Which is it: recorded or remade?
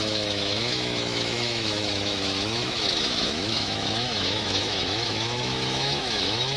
remade